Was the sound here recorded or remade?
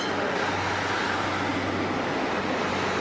recorded